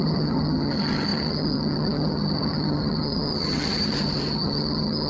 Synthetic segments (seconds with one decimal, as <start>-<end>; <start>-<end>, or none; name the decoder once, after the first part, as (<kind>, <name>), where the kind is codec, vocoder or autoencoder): 0.0-5.1 (vocoder, HiFi-GAN)